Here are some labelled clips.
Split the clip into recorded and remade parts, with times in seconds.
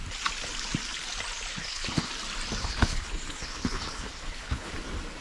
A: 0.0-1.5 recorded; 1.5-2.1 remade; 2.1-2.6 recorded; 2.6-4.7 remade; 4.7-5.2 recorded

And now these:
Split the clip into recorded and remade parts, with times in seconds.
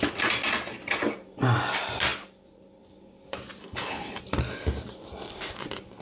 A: 0.0-3.6 recorded; 3.6-4.2 remade; 4.2-6.0 recorded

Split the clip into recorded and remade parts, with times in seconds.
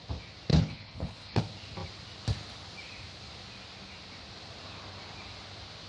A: 0.0-0.5 recorded; 0.5-1.4 remade; 1.4-5.9 recorded